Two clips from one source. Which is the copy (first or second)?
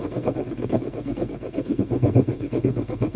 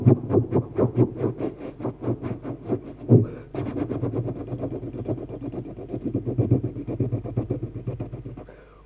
first